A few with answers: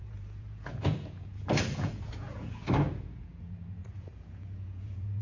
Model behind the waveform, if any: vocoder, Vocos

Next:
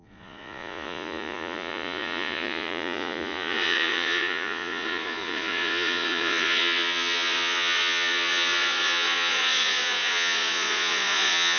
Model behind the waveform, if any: vocoder, Vocos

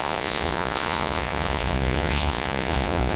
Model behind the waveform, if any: vocoder, Vocos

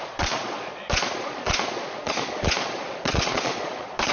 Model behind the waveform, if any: vocoder, Vocos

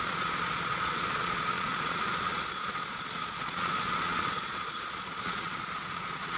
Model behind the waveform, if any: vocoder, Vocos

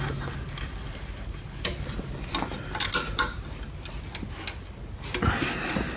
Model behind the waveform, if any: none